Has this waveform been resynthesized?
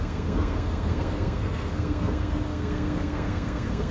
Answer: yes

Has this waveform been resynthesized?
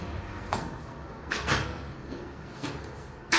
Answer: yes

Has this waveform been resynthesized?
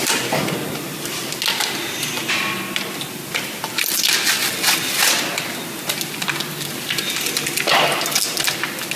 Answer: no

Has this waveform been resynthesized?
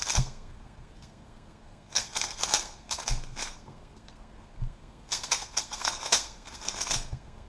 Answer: yes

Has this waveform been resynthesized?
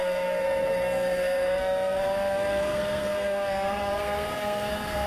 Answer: yes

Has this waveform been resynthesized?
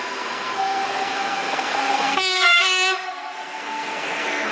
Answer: yes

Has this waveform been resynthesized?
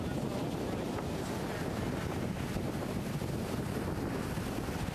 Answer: no